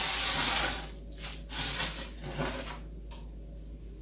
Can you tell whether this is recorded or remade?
recorded